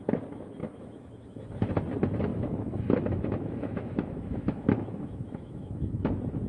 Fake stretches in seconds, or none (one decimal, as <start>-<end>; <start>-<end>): 0.6-1.5; 2.3-6.1